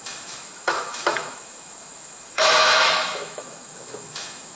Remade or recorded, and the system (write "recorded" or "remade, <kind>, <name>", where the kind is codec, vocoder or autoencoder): remade, autoencoder, DAC-VAE